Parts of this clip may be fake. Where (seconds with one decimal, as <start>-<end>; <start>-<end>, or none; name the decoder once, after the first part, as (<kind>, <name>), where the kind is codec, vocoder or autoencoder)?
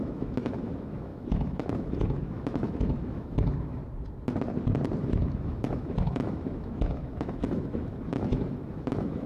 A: 0.0-3.8 (autoencoder, DAC-VAE); 5.0-9.3